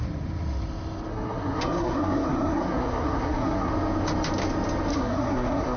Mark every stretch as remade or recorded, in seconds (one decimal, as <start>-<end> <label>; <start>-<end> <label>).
0.0-1.1 recorded; 1.1-3.7 remade; 3.7-4.9 recorded; 4.9-5.8 remade